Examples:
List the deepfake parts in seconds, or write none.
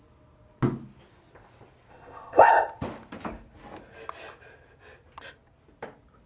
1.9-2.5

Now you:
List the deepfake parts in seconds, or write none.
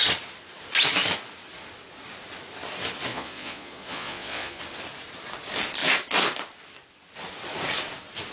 3.1-4.6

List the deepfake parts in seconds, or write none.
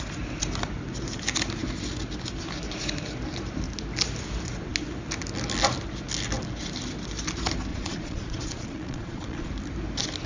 7.7-9.5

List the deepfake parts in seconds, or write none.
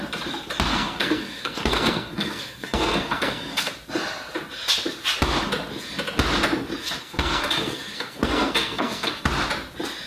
0.7-3.7; 7.0-9.3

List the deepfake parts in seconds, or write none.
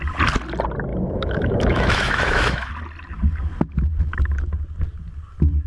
0.9-2.7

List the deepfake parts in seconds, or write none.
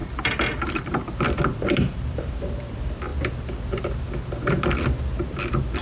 0.7-3.1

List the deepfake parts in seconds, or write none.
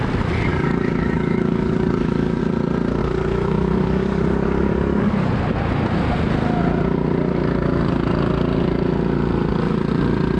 0.5-2.4; 3.0-5.3